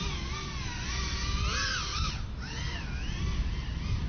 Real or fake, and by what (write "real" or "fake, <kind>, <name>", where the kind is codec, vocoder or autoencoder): real